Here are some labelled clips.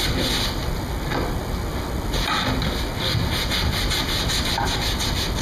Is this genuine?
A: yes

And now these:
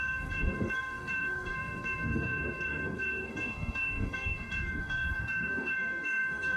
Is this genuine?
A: no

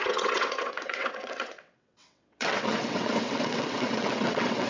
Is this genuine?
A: no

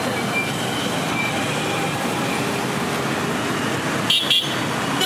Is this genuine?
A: yes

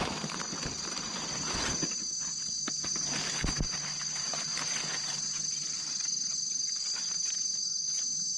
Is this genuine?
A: yes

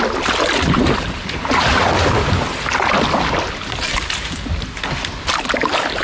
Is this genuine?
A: yes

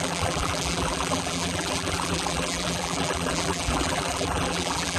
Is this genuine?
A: no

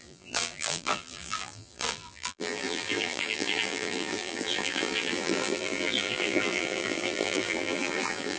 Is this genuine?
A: no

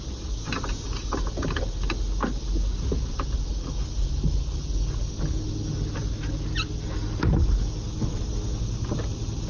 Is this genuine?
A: yes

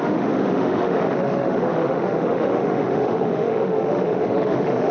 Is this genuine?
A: no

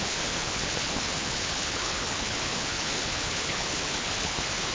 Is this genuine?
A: no